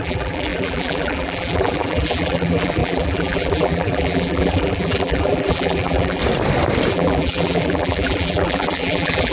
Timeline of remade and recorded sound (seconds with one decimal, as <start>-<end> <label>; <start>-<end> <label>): 0.0-6.2 remade; 6.2-6.9 recorded; 6.9-9.3 remade